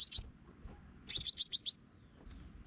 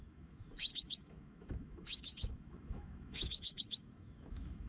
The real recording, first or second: first